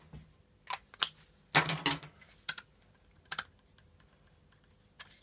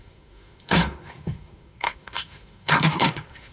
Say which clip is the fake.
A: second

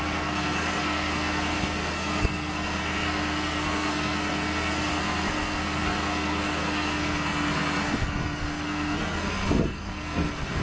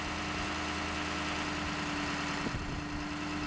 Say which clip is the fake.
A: first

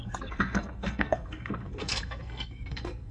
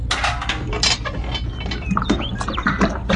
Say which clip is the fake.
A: first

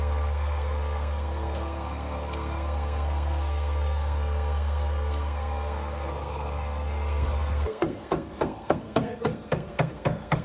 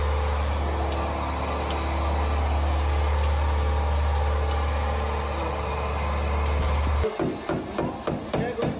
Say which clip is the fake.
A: first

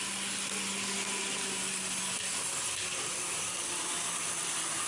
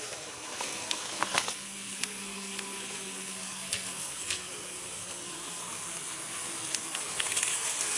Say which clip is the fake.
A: second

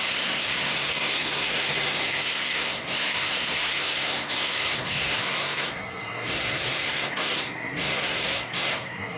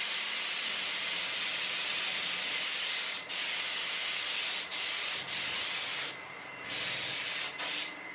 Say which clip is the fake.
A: first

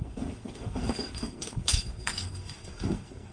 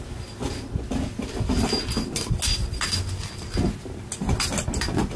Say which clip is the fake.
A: first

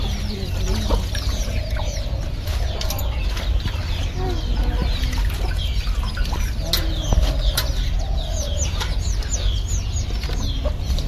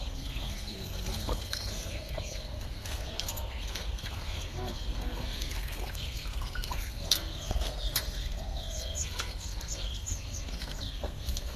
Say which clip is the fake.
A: second